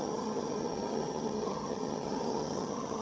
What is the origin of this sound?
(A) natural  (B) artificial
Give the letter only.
B